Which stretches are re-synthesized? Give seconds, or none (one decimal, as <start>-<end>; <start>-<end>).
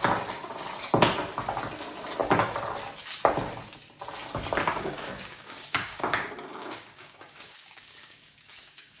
4.7-9.0